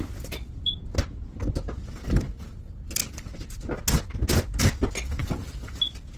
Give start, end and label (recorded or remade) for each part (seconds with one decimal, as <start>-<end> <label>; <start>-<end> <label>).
0.0-6.2 recorded